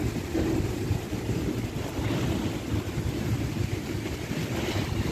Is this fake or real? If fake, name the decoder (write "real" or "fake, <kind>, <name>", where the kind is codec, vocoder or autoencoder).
real